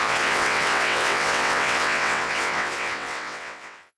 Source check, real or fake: fake